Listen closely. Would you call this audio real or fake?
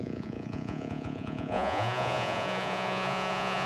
fake